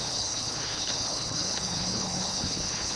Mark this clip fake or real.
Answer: fake